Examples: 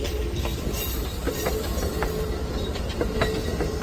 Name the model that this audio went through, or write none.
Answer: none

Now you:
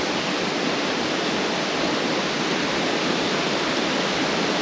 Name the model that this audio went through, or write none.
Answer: none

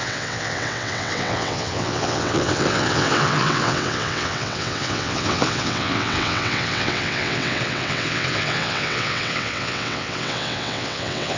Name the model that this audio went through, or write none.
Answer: vocoder, WaveNeXt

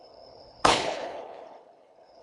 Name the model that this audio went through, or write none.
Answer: codec, HILCodec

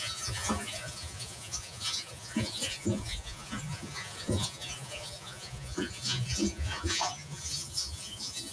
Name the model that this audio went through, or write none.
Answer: vocoder, Vocos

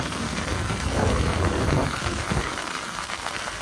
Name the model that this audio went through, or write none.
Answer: codec, SNAC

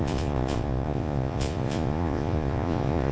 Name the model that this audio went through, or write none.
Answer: vocoder, Vocos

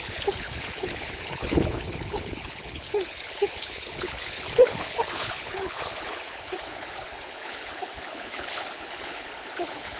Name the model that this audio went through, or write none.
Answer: codec, HILCodec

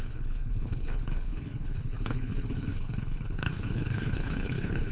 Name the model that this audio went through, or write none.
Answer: codec, HILCodec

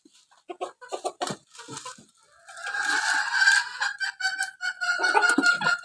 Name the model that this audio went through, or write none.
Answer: none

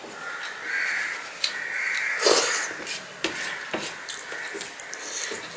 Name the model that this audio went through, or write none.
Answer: none